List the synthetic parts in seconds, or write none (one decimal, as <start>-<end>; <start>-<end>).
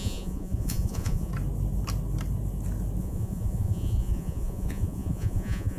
0.0-1.3; 3.0-5.8